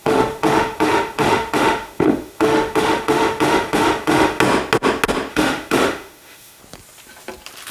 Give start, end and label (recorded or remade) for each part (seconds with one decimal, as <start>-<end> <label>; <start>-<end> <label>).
0.0-4.4 remade; 4.4-5.3 recorded; 5.3-6.6 remade; 6.6-7.7 recorded